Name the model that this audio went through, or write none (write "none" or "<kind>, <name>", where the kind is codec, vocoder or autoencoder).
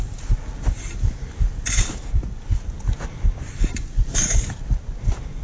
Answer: none